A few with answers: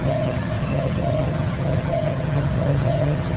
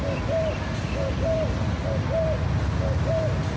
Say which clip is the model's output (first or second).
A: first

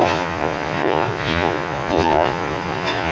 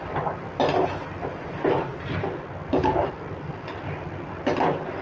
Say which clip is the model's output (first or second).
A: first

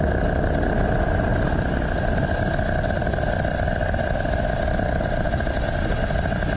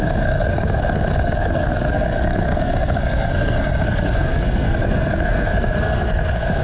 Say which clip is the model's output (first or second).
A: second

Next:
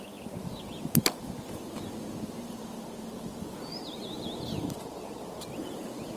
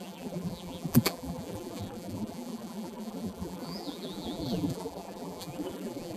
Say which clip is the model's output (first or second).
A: second